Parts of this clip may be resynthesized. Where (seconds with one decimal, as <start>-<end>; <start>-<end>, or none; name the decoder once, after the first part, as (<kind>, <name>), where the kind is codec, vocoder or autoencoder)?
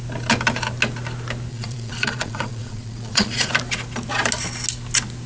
1.5-3.5 (vocoder, Vocos)